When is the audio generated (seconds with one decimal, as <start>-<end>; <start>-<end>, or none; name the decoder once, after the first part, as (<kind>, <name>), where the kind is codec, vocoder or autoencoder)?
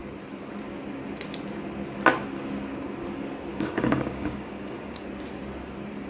3.5-5.0 (codec, DAC)